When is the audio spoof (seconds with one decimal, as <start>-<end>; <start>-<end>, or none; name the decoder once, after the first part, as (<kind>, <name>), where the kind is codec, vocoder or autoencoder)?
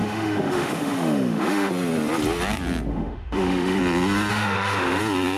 0.0-1.7 (autoencoder, DAC-VAE); 2.9-3.8; 4.3-5.0